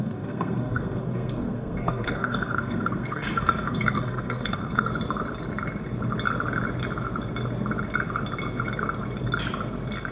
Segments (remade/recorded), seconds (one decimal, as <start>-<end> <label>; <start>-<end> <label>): 0.0-4.9 remade; 4.9-10.1 recorded